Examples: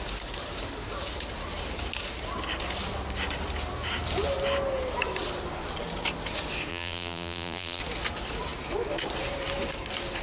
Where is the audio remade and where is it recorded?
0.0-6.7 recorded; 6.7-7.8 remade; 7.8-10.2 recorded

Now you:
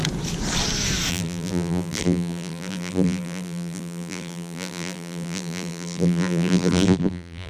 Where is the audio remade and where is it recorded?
0.0-1.1 recorded; 1.1-7.5 remade

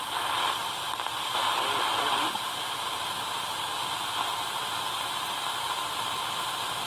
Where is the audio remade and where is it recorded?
0.0-0.6 remade; 0.6-1.6 recorded; 1.6-3.7 remade; 3.7-5.1 recorded; 5.1-6.9 remade

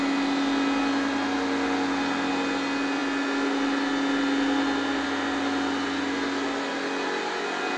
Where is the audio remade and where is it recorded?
0.0-7.8 recorded

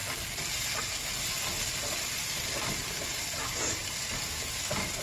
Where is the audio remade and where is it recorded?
0.0-3.8 recorded; 3.8-5.0 remade

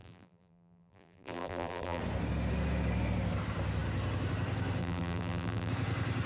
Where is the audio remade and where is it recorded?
0.0-2.0 remade; 2.0-4.8 recorded; 4.8-5.7 remade; 5.7-6.3 recorded